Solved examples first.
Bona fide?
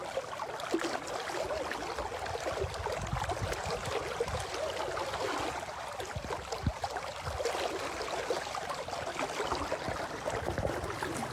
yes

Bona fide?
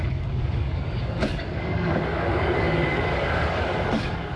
no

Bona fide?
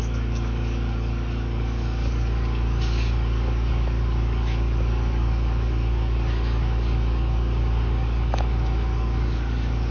no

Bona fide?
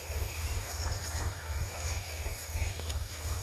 no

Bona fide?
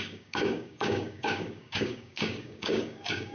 no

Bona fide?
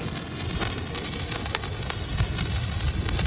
yes